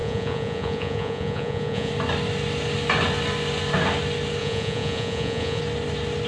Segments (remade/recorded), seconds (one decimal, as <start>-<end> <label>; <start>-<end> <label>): 0.0-1.9 remade; 1.9-4.4 recorded; 4.4-5.6 remade; 5.6-6.3 recorded